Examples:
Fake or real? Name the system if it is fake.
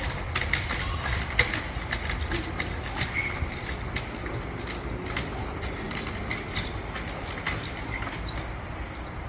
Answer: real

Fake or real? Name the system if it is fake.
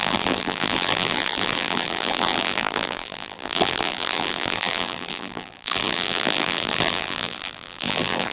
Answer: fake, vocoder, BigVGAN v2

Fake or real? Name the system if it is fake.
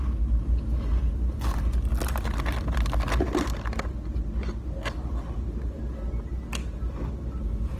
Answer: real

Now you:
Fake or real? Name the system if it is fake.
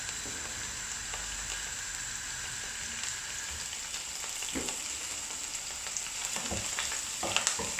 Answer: real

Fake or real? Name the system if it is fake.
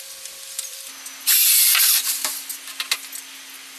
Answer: real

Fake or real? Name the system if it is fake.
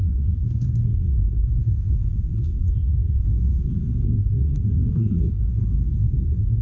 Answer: fake, codec, SNAC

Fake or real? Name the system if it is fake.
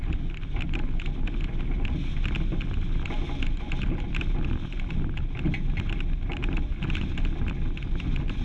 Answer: real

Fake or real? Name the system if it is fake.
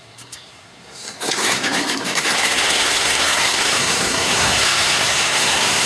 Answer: fake, codec, SNAC